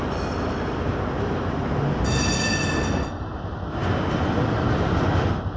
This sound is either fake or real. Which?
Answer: real